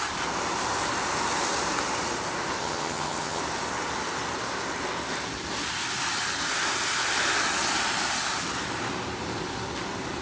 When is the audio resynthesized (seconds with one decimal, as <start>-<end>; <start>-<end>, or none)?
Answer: 2.6-3.4